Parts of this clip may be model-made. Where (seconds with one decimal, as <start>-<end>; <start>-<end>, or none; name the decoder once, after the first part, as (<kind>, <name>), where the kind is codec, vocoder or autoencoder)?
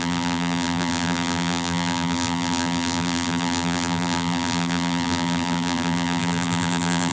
0.0-7.1 (vocoder, BigVGAN v2)